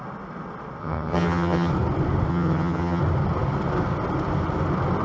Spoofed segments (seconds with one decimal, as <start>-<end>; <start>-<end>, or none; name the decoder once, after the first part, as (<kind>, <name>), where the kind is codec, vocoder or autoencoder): 0.8-1.7 (vocoder, HiFi-GAN); 2.3-3.0